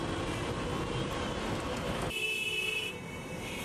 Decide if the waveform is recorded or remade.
recorded